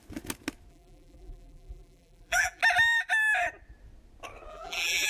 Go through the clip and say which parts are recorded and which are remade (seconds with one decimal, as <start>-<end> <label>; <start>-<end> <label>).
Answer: 0.0-0.7 recorded; 0.7-2.6 remade; 2.6-4.5 recorded; 4.5-5.1 remade

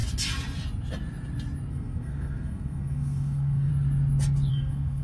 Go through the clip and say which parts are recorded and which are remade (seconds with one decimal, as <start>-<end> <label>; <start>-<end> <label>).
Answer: 0.0-1.7 recorded; 1.7-3.7 remade; 3.7-4.5 recorded; 4.5-5.0 remade

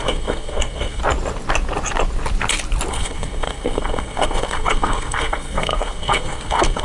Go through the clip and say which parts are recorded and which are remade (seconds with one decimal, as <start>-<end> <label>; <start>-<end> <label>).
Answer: 0.0-1.0 remade; 1.0-2.9 recorded; 2.9-6.8 remade

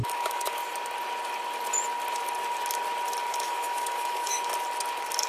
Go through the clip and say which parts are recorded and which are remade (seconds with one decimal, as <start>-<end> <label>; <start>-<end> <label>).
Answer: 0.0-0.6 remade; 0.6-3.3 recorded; 3.3-4.5 remade; 4.5-5.3 recorded

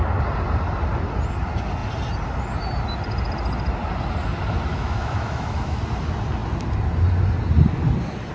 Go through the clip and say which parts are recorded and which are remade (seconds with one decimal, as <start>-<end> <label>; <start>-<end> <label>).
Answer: 0.0-4.7 recorded; 4.7-5.8 remade; 5.8-8.3 recorded

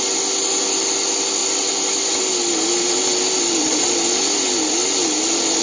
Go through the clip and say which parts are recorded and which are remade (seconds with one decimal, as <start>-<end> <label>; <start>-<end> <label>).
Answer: 0.0-5.6 recorded

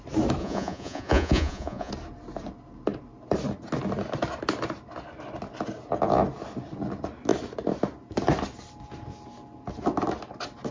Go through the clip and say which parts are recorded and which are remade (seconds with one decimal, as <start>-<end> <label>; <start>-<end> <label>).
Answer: 0.0-0.4 recorded; 0.4-1.9 remade; 1.9-10.7 recorded

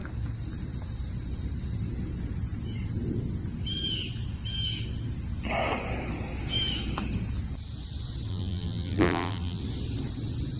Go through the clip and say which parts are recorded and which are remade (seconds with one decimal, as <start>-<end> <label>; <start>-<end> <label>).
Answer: 0.0-8.3 recorded; 8.3-9.6 remade; 9.6-10.6 recorded